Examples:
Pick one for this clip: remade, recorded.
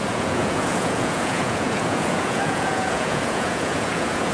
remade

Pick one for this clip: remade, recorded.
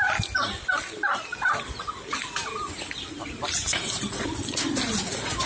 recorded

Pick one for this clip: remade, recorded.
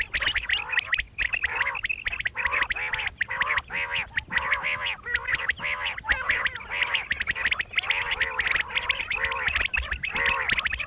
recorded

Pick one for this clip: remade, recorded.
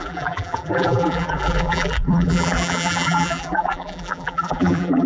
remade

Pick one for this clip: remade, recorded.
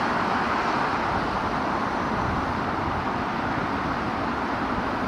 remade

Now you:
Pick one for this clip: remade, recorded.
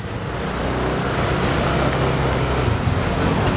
recorded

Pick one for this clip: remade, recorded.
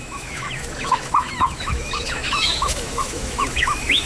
remade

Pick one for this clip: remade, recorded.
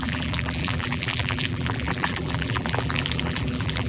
remade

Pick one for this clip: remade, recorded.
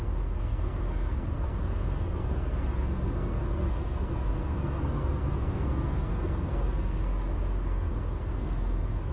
remade